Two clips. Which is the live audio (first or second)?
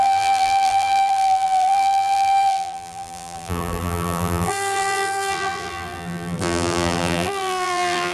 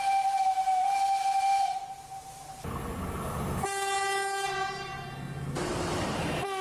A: second